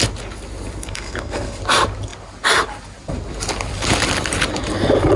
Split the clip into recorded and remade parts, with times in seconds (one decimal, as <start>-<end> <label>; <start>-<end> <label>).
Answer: 0.0-0.8 recorded; 0.8-1.6 remade; 1.6-5.2 recorded